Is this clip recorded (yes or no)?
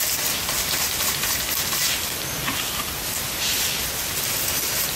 yes